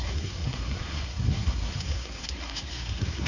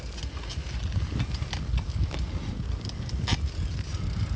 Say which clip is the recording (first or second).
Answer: second